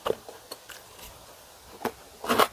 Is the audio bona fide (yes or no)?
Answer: yes